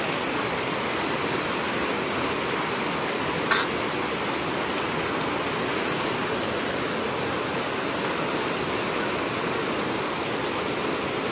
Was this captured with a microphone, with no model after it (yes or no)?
yes